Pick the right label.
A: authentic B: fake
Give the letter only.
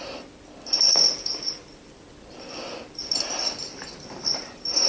B